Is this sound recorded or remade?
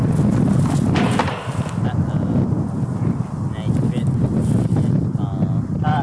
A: recorded